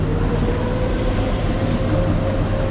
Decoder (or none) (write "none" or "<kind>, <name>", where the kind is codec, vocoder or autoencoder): none